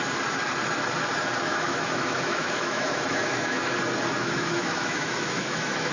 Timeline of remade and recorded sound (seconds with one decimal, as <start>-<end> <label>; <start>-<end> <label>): 0.0-1.5 recorded; 1.5-3.7 remade; 3.7-4.2 recorded; 4.2-5.9 remade